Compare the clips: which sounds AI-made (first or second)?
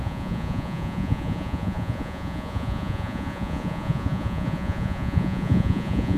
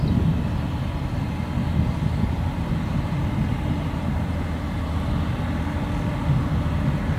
first